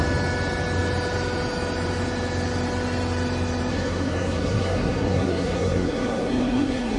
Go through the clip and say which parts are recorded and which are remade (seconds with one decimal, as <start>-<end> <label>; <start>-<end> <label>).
0.0-3.7 recorded; 3.7-7.0 remade